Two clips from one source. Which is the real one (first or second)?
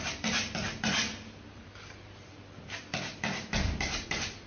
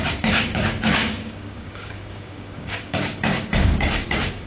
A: first